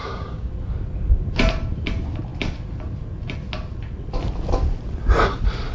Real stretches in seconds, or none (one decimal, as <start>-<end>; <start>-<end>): 0.5-5.7